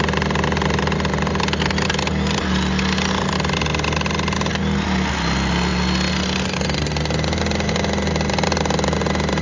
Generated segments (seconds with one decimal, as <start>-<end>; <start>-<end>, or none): none